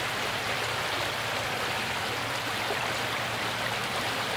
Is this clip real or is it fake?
fake